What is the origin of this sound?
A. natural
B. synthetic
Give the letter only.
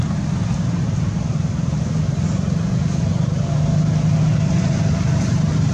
A